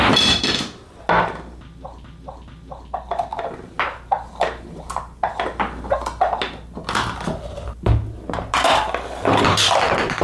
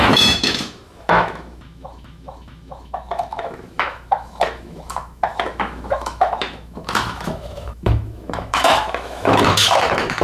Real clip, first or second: first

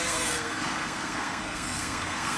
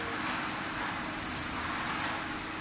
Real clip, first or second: second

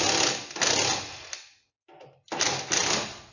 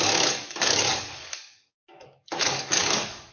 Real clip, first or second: first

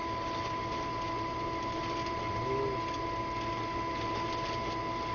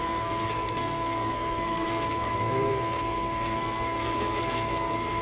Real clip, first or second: first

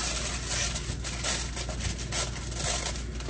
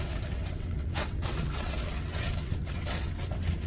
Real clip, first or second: first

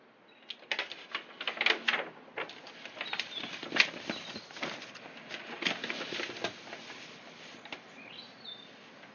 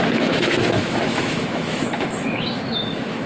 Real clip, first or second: first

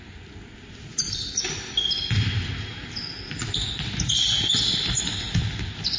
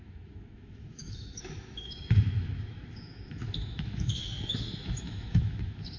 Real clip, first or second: first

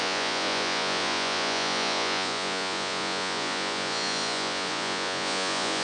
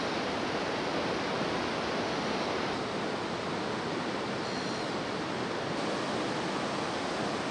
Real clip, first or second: second